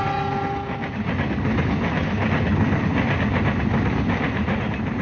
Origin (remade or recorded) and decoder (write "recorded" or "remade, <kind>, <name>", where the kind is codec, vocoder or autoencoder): recorded